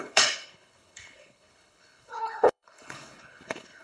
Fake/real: fake